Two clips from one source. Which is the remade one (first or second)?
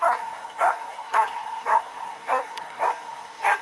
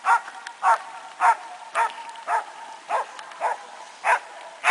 first